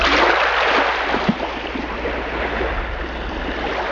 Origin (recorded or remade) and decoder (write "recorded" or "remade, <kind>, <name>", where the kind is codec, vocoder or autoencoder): recorded